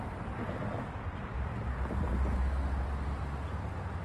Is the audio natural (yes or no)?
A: yes